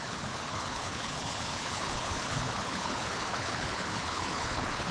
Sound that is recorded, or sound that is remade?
remade